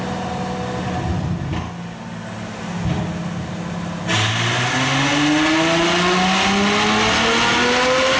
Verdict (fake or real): real